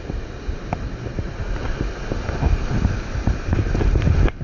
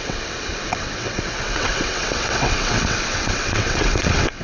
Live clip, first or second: first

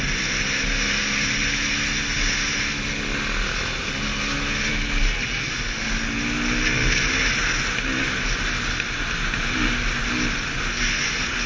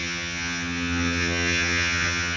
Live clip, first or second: first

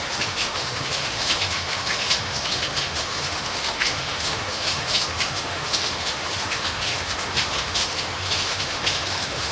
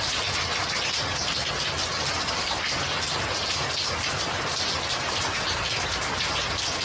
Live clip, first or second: second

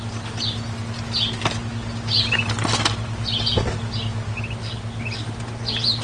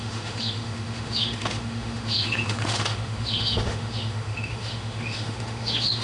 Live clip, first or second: first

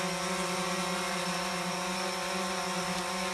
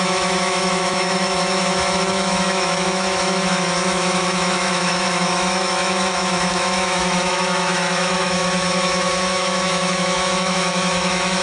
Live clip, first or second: first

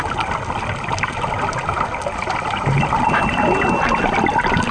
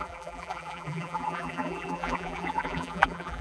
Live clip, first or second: first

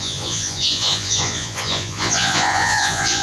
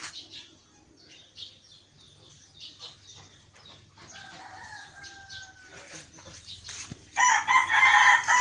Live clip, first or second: second